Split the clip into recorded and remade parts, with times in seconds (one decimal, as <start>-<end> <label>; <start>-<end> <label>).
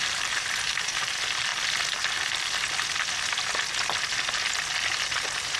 0.0-1.5 remade; 1.5-4.9 recorded; 4.9-5.6 remade